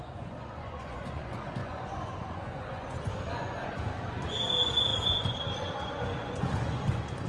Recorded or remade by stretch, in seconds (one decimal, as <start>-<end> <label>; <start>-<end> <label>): 0.0-7.3 remade